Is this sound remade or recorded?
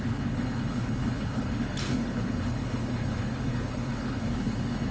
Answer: remade